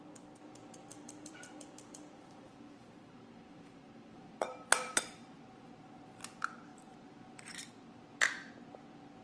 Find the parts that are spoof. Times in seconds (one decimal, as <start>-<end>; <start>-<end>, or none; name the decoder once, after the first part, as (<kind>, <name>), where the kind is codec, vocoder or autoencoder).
0.9-5.0 (vocoder, BigVGAN v2); 6.7-7.7